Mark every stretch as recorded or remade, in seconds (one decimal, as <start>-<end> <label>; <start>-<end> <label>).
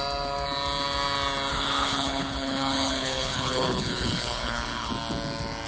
0.0-1.5 recorded; 1.5-4.9 remade; 4.9-5.7 recorded